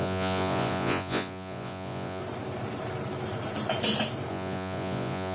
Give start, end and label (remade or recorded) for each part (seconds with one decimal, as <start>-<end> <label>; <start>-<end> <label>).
0.0-2.2 remade; 2.2-4.3 recorded; 4.3-5.3 remade